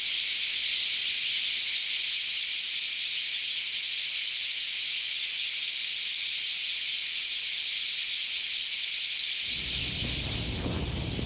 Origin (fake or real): real